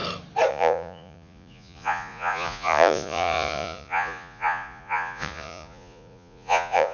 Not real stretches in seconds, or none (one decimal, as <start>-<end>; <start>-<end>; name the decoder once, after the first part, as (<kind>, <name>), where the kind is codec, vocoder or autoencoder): 0.5-6.9 (vocoder, Vocos)